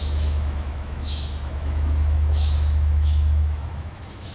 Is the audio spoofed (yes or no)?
yes